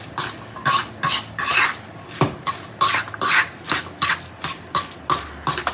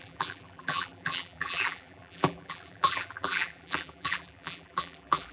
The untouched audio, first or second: first